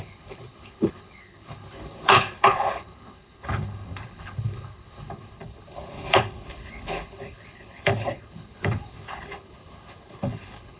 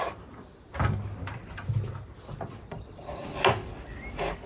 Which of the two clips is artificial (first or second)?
first